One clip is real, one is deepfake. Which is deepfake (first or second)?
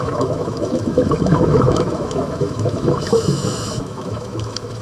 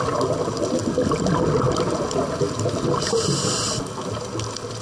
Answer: first